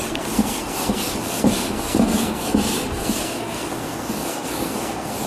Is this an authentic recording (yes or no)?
no